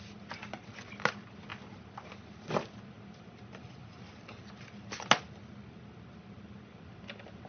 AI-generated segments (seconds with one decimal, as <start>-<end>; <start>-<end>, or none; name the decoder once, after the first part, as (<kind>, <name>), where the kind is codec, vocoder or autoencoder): none